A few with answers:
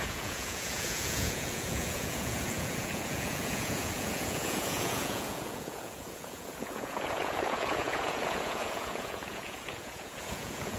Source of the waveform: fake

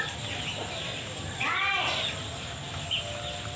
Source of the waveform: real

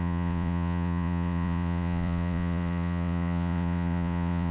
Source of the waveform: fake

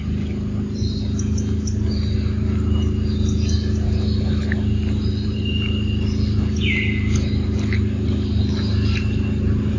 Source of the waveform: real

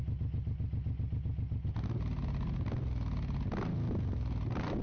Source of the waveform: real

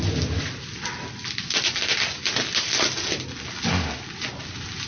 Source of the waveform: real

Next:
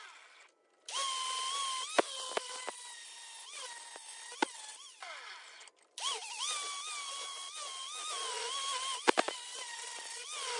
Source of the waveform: real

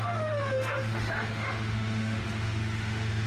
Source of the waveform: fake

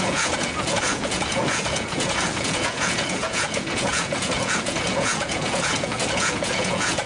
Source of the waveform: fake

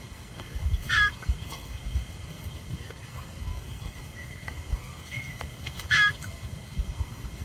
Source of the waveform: fake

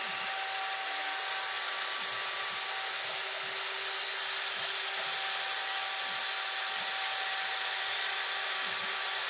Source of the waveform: real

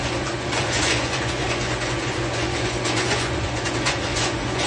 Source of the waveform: fake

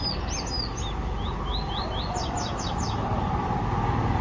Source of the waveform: real